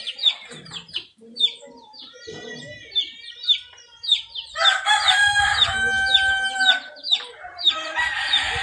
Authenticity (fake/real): fake